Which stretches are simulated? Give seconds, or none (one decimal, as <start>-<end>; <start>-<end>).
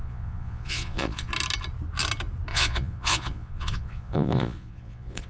0.0-1.3; 2.5-5.3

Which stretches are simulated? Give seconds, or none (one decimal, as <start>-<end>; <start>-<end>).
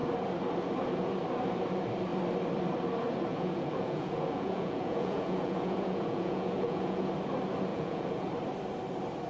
3.3-7.1; 7.7-8.3